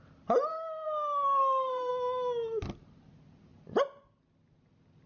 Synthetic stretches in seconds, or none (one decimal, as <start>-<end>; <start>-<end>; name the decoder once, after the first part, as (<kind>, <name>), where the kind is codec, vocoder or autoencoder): 0.5-1.9 (codec, SNAC)